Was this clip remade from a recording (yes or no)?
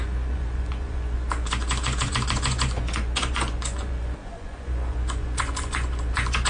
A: yes